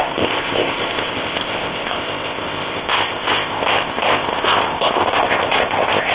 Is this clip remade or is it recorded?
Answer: remade